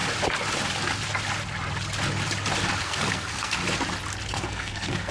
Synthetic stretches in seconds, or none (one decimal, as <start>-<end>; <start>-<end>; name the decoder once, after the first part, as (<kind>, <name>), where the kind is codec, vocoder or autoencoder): 2.8-3.6 (codec, SNAC); 4.3-5.1